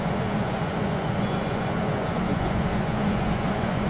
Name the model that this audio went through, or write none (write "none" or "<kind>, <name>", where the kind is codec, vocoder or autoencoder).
vocoder, Vocos